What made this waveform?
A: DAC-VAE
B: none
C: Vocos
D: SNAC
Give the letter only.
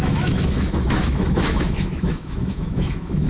A